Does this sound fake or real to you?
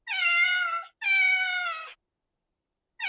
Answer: real